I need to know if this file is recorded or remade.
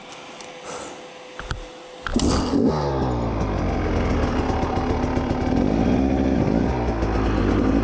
recorded